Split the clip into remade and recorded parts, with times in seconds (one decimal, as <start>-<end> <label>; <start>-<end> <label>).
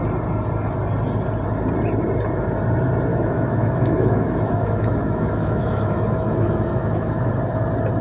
0.0-3.1 recorded; 3.1-7.3 remade; 7.3-8.0 recorded